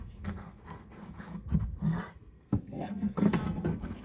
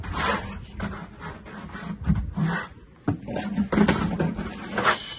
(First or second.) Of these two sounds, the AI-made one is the first